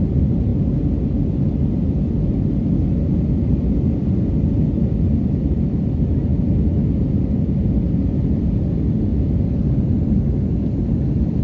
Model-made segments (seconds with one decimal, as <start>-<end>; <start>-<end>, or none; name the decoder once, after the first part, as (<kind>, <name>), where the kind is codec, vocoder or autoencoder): none